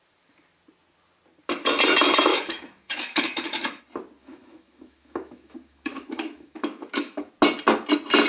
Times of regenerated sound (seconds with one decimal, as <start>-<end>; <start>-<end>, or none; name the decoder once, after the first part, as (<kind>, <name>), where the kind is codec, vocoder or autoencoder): 2.3-3.8 (autoencoder, DAC-VAE); 4.2-7.3